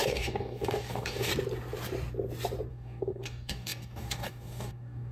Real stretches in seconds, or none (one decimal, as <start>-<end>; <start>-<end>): 1.3-2.7